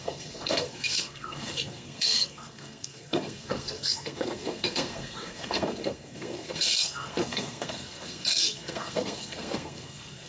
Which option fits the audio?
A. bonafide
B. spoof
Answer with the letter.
B